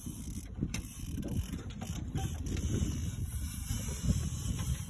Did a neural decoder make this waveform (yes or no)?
yes